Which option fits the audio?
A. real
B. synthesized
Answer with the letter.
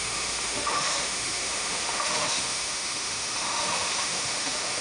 B